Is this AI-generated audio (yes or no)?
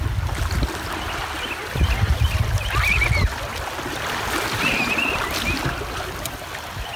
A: no